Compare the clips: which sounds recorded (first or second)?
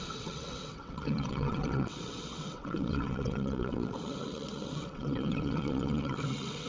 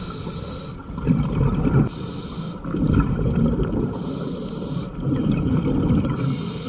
second